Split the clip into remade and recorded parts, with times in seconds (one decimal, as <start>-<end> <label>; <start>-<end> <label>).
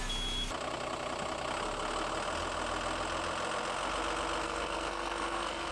0.0-4.4 recorded; 4.4-5.7 remade